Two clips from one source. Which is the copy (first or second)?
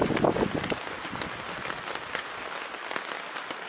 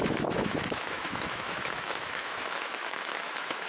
second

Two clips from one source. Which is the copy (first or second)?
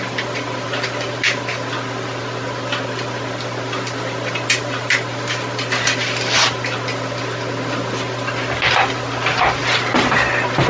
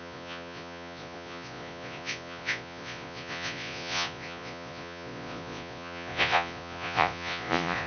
second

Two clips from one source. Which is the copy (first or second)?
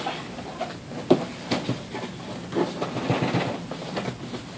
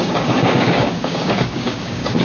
second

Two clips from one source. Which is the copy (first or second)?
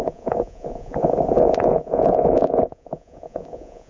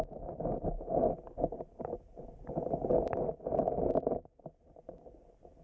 first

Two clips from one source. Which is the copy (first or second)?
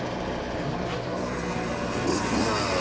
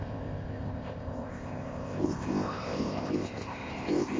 second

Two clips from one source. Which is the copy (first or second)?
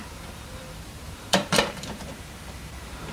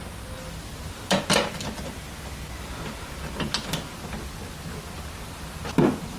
first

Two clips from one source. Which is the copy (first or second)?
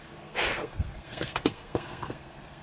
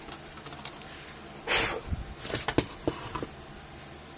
first